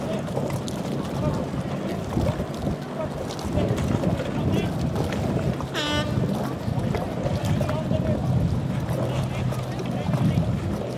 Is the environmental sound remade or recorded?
recorded